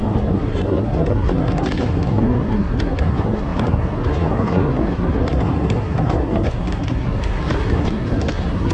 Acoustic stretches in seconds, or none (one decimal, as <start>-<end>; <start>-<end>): none